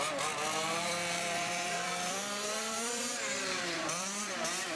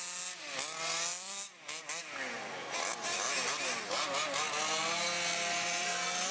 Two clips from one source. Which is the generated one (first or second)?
first